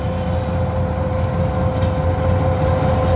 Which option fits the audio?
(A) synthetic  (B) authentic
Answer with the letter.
B